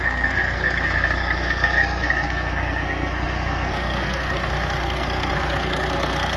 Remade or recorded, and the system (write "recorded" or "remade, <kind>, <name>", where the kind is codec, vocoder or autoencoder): remade, codec, SNAC